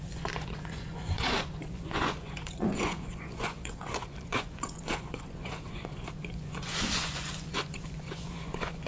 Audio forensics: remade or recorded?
remade